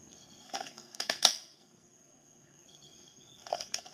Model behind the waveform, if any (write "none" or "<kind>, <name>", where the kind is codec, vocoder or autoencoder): codec, SNAC